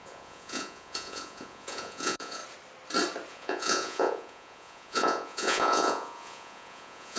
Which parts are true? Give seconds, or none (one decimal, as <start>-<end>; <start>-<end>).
2.4-3.3